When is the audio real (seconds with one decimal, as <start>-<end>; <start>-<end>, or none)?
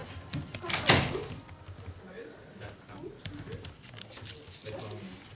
0.0-5.3